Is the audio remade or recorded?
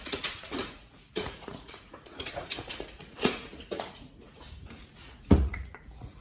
remade